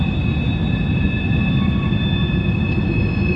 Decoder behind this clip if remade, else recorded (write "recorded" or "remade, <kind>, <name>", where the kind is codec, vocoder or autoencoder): recorded